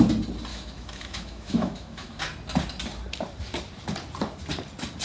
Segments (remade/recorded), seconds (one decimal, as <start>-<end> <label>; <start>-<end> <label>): 0.0-0.5 recorded; 0.5-2.2 remade; 2.2-5.0 recorded